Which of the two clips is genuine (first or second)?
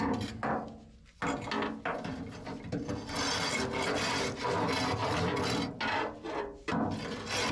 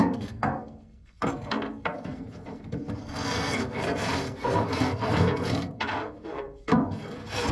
first